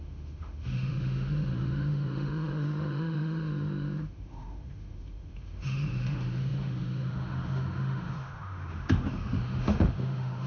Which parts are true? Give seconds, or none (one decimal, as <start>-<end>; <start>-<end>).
none